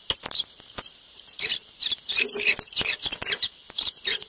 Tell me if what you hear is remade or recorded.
remade